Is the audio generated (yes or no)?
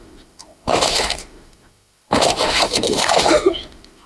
yes